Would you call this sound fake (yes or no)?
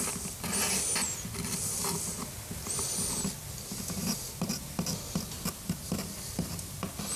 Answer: no